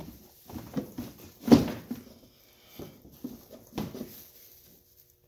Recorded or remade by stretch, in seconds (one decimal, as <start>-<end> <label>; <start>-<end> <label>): 0.0-0.7 remade; 0.7-5.3 recorded